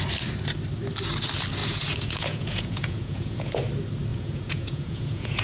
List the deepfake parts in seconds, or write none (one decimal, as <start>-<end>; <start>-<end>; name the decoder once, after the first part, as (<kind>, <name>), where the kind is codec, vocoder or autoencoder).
1.6-3.6 (vocoder, Vocos); 4.1-5.4